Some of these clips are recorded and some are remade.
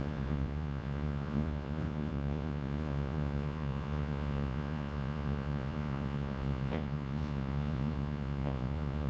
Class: remade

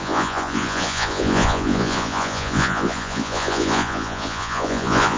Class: remade